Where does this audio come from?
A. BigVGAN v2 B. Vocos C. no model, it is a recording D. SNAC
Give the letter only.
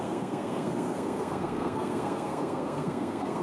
D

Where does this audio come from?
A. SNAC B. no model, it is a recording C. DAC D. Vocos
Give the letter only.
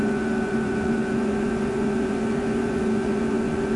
D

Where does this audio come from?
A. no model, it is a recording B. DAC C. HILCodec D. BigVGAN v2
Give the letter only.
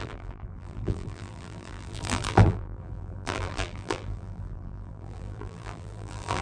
D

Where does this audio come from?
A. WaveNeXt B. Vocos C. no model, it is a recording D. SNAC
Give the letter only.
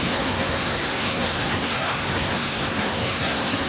D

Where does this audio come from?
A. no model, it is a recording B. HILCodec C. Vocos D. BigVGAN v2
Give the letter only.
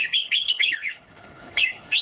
B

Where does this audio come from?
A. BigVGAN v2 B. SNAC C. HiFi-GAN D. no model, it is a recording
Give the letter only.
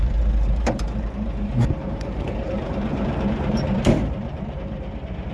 A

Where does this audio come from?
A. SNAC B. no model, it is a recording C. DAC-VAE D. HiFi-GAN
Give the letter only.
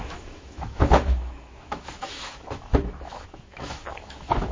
C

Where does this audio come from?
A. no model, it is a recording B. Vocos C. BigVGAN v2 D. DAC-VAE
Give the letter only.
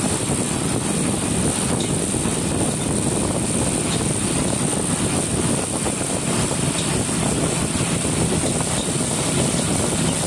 A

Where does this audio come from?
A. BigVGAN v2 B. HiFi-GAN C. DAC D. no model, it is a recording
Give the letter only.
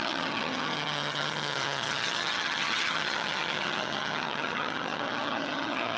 B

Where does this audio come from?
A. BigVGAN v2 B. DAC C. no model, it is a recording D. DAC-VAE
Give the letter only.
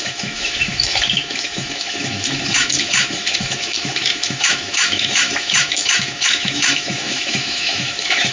D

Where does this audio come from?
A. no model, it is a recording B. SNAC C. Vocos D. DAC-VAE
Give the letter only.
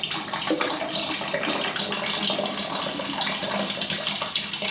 A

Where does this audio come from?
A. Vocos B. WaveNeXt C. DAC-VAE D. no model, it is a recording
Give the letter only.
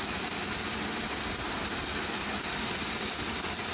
D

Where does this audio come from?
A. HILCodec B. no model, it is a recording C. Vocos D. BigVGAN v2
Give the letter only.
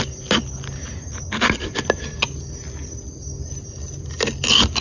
B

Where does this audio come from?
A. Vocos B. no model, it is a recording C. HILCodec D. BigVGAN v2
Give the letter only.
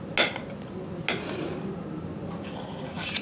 B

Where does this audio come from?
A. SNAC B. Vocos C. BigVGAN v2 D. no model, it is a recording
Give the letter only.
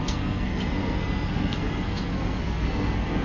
A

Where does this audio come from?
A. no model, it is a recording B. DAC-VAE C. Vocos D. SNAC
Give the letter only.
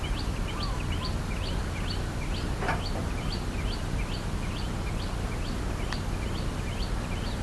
A